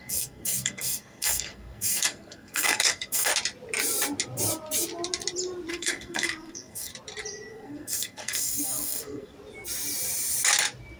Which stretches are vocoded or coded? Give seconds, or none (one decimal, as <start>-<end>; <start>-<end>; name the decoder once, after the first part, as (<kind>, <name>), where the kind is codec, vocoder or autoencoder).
0.0-3.3 (codec, SNAC); 5.7-6.9; 7.5-9.3